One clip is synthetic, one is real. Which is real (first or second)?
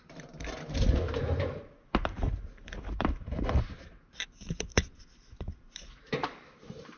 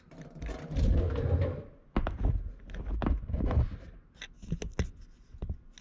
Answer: second